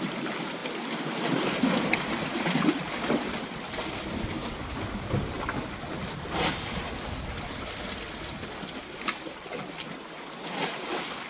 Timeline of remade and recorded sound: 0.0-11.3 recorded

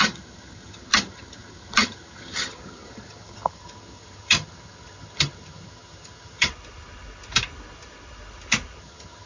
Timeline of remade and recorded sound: 0.0-6.5 remade; 6.5-8.8 recorded; 8.8-9.3 remade

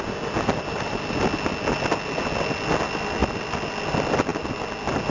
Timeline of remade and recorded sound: 0.0-5.1 recorded